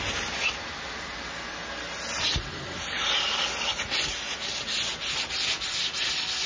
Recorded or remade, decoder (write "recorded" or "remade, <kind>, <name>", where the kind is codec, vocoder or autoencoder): recorded